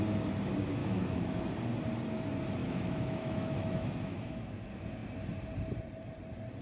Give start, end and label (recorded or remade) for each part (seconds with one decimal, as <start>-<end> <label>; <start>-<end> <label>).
0.0-0.8 recorded; 0.8-1.4 remade; 1.4-2.6 recorded; 2.6-4.4 remade; 4.4-6.6 recorded